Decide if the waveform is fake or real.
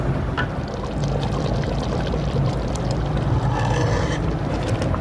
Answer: fake